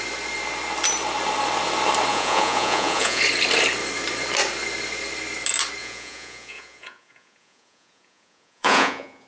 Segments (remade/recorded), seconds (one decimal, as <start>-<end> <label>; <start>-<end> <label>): 0.0-2.1 recorded; 2.1-3.2 remade; 3.2-5.8 recorded; 5.8-9.3 remade